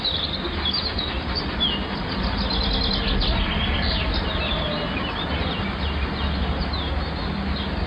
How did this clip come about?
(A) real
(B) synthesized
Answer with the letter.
A